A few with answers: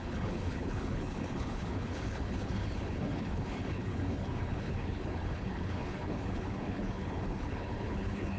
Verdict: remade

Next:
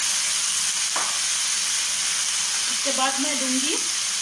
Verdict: recorded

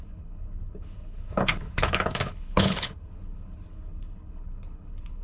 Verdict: remade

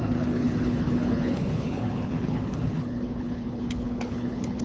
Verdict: remade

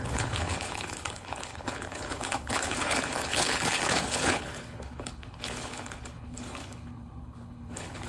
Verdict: remade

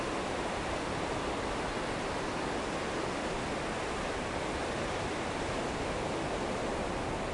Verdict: recorded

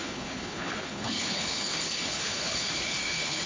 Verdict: remade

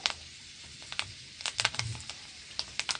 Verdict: recorded